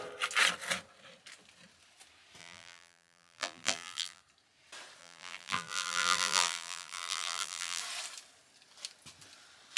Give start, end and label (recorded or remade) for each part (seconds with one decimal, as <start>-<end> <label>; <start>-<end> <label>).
0.0-2.4 recorded; 2.4-4.2 remade; 4.2-5.0 recorded; 5.0-7.8 remade; 7.8-9.8 recorded